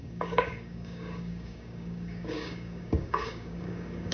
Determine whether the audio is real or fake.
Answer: fake